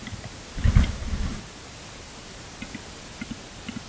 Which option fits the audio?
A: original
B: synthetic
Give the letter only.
A